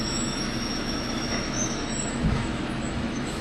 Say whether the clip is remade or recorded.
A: remade